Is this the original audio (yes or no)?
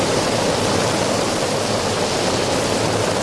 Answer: yes